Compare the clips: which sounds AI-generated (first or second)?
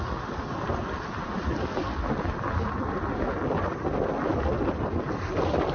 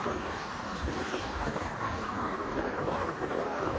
second